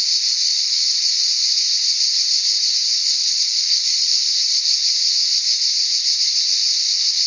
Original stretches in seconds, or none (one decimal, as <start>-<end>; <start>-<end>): 0.0-0.4; 0.9-3.2; 4.3-7.3